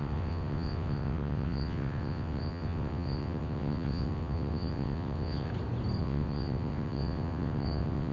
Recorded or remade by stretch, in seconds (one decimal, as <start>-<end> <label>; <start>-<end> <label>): 0.0-5.5 remade; 5.5-6.0 recorded; 6.0-8.1 remade